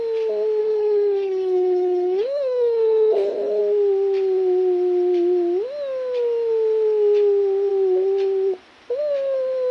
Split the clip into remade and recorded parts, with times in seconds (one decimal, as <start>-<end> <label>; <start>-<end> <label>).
0.0-0.6 recorded; 0.6-3.6 remade; 3.6-9.7 recorded